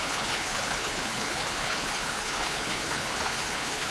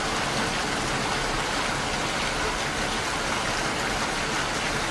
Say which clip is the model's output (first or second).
first